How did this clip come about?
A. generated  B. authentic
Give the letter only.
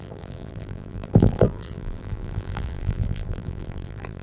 A